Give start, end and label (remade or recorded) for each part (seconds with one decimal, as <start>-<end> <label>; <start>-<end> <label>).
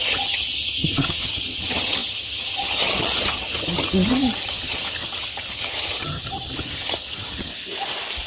0.0-7.5 remade; 7.5-8.3 recorded